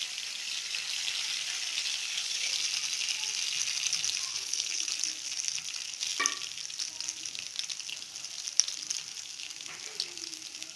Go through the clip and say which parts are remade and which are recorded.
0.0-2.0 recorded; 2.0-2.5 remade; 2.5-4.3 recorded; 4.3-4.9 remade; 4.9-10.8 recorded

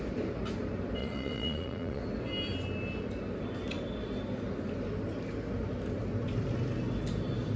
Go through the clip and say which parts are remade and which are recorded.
0.0-1.0 recorded; 1.0-2.0 remade; 2.0-7.6 recorded